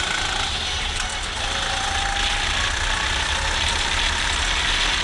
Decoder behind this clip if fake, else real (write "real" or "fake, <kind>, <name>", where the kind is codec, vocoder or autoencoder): real